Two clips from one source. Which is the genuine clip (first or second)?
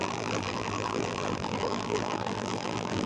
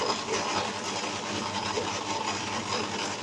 second